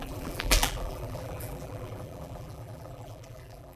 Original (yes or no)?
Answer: no